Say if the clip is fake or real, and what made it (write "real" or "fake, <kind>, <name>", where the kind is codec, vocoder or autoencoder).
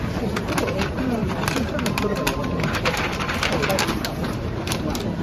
fake, vocoder, BigVGAN v2